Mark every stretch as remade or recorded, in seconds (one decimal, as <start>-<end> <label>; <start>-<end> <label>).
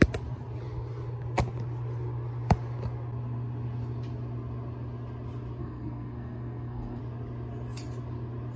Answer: 0.0-5.6 recorded; 5.6-7.0 remade; 7.0-8.6 recorded